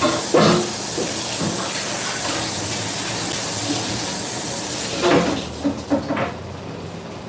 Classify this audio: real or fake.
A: real